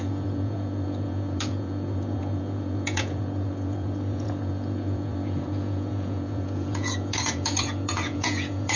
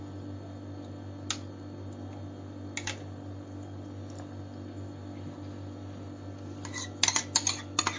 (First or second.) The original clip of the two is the second